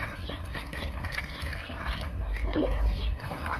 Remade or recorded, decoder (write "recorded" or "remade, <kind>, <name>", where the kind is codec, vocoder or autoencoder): remade, codec, SNAC